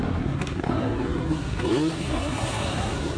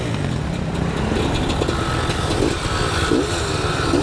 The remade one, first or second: first